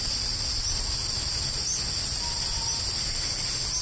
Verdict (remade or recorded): recorded